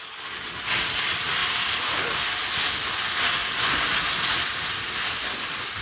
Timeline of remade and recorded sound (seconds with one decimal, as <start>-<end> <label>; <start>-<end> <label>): 0.0-5.8 recorded